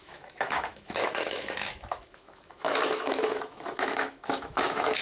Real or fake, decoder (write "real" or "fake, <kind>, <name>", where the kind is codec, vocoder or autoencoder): fake, autoencoder, DAC-VAE